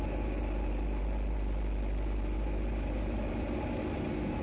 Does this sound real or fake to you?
real